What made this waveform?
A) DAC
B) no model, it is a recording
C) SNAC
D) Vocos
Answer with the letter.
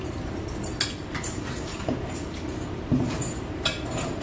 B